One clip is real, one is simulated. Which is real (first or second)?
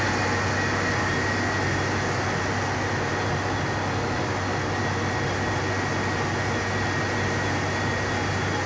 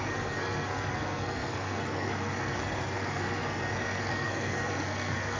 first